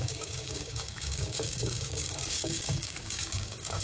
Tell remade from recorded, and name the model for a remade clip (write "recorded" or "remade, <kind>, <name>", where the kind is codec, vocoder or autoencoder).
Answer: remade, codec, DAC